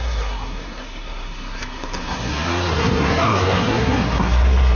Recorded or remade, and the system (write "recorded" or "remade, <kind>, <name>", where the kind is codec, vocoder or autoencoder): remade, codec, SNAC